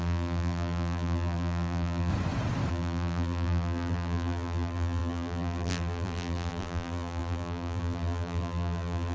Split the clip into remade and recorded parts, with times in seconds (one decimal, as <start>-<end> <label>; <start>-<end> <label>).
0.0-2.1 remade; 2.1-2.7 recorded; 2.7-9.1 remade